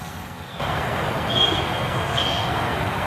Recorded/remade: remade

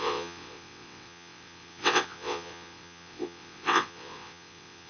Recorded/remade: remade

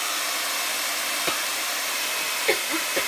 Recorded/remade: recorded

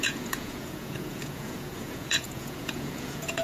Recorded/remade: remade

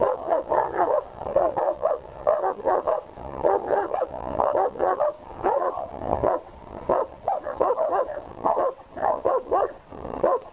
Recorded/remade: remade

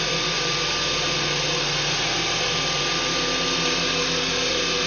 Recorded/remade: recorded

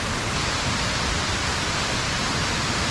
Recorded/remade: recorded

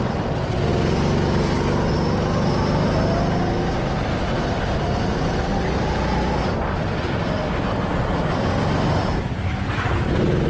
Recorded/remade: recorded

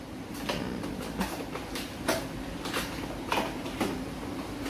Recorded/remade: recorded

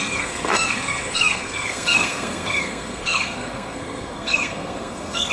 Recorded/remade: remade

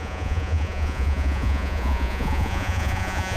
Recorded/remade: remade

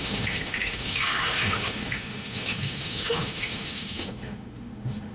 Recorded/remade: remade